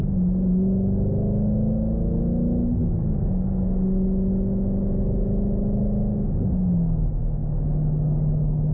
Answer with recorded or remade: recorded